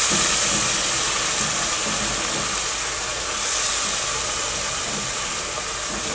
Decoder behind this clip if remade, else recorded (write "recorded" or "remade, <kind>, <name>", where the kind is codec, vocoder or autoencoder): recorded